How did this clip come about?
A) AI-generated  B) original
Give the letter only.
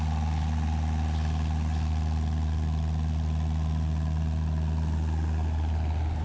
B